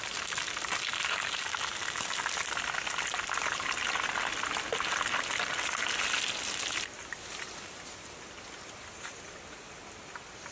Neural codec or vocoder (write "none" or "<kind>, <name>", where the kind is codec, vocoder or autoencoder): none